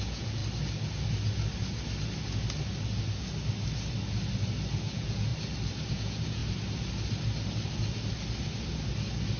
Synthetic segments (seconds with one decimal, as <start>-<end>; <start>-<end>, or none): 0.0-0.4; 4.8-5.3; 5.9-6.4